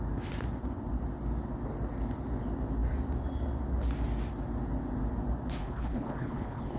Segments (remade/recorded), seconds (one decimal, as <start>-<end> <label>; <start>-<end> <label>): 0.0-5.6 recorded; 5.6-6.8 remade